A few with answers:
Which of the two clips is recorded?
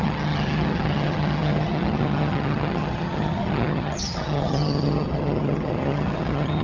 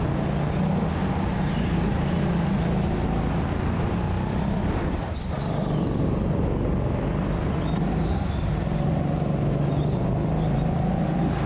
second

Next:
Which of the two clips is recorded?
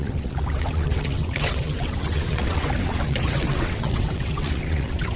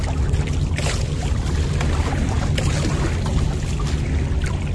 second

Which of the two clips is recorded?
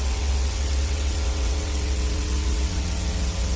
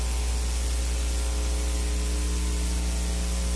second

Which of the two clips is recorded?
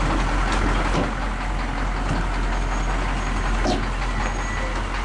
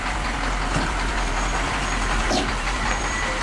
first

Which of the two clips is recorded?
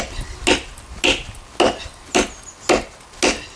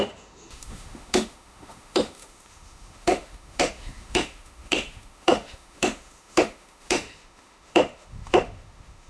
first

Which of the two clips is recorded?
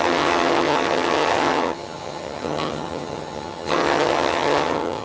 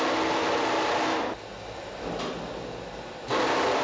second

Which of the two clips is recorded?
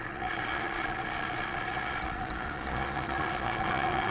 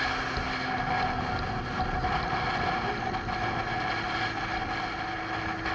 second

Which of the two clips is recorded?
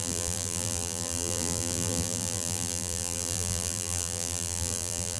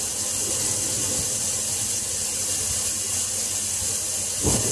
second